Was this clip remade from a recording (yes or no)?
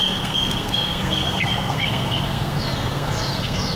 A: yes